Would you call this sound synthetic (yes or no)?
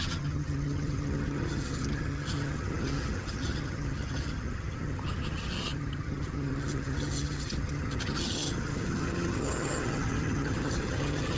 yes